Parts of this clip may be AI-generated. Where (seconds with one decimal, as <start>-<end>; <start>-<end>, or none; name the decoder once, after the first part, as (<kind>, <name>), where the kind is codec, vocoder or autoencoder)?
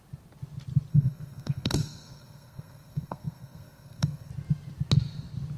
0.9-4.3 (codec, SNAC)